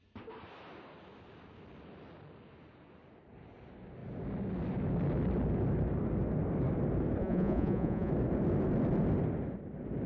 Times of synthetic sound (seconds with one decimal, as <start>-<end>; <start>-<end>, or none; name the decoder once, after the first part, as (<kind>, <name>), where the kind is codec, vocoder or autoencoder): 7.2-8.1 (vocoder, Vocos)